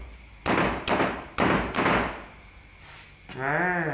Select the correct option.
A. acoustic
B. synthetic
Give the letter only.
A